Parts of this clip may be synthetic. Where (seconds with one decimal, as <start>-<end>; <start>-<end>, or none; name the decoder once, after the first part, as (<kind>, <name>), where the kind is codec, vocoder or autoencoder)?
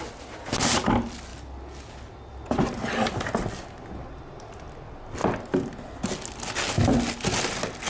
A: none